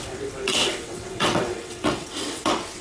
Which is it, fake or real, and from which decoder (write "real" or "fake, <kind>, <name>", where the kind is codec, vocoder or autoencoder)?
fake, vocoder, WaveNeXt